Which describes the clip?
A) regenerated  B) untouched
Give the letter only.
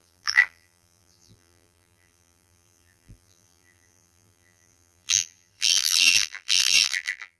A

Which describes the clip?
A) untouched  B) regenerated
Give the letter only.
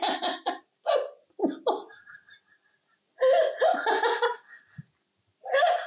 A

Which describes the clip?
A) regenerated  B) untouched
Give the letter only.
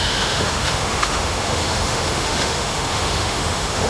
A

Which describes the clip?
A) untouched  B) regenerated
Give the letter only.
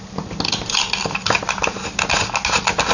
A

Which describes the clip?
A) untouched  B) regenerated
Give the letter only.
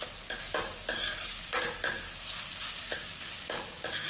A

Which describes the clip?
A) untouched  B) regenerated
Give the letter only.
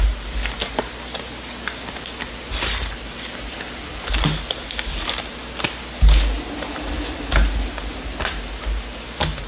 A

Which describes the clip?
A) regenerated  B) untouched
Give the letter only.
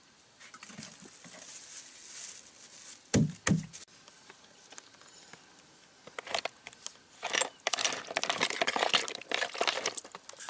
B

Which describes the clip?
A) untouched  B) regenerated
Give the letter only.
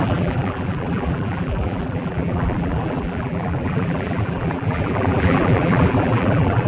B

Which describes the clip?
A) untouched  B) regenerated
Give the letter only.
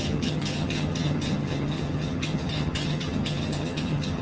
B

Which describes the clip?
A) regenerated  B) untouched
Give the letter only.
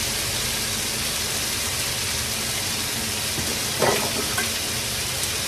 B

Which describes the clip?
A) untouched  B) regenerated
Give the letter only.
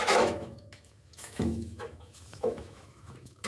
B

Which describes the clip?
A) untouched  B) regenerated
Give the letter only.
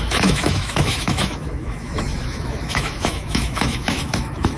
B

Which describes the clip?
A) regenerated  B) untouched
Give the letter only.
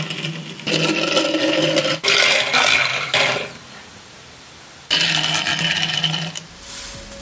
B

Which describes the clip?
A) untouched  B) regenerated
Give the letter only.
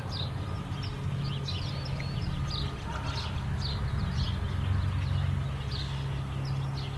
A